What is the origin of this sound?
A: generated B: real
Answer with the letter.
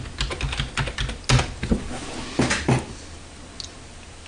B